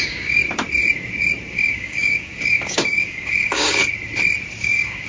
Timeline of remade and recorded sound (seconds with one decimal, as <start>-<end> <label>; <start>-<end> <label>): 0.0-0.4 remade; 0.4-1.5 recorded; 1.5-3.8 remade; 3.8-4.6 recorded; 4.6-5.1 remade